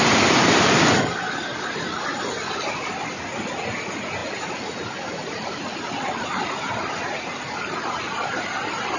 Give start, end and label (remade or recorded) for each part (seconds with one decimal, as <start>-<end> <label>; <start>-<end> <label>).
0.0-9.0 recorded